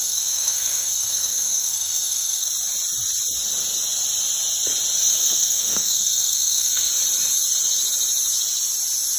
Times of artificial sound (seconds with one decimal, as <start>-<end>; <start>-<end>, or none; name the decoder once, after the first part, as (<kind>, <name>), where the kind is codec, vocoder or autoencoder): 0.0-2.5 (codec, SNAC); 5.1-6.9